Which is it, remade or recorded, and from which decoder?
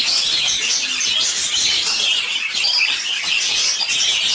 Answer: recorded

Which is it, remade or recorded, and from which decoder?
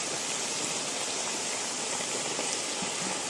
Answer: recorded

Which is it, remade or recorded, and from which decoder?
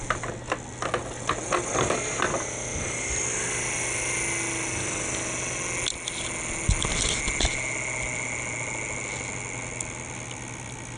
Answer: recorded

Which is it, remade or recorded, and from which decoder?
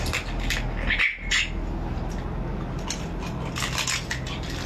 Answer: recorded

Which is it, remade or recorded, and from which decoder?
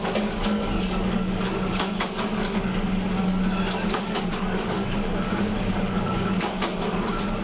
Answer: remade, codec, DAC